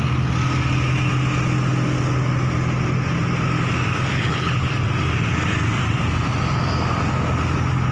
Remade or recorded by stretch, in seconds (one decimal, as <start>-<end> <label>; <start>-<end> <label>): 0.0-4.1 recorded; 4.1-4.7 remade; 4.7-7.9 recorded